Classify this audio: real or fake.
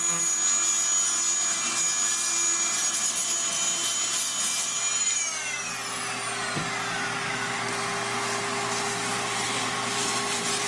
real